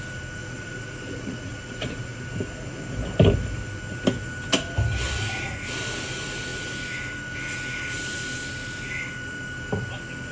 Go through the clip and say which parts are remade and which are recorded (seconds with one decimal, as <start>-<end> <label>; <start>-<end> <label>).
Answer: 0.0-0.4 recorded; 0.4-2.2 remade; 2.2-10.3 recorded